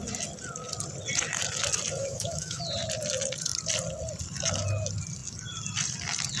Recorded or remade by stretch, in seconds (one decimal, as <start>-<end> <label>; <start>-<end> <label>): 0.0-2.0 recorded; 2.0-2.6 remade; 2.6-6.4 recorded